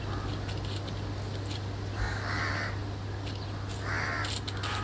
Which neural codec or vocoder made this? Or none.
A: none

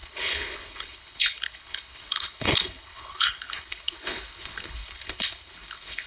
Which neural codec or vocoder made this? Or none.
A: codec, HILCodec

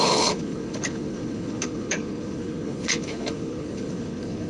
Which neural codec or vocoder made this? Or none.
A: codec, HILCodec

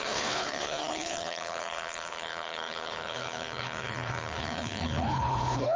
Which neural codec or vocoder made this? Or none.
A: codec, HILCodec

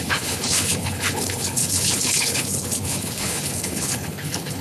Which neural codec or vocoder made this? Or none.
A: codec, HILCodec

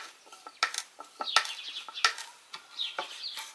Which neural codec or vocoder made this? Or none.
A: none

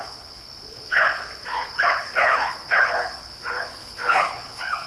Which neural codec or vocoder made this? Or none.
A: codec, HILCodec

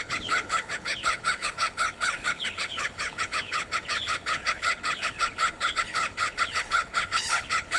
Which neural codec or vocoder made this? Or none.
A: codec, HILCodec